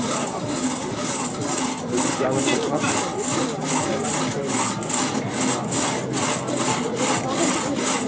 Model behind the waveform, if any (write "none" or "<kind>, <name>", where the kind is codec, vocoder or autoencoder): none